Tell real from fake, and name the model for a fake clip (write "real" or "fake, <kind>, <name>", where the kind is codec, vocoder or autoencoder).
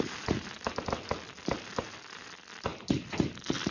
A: real